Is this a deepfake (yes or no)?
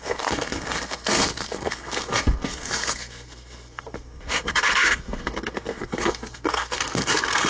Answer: yes